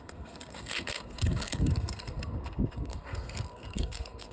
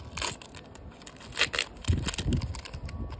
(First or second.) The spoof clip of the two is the first